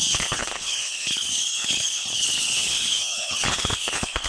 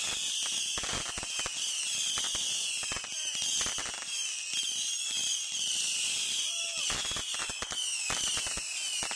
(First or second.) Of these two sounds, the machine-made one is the first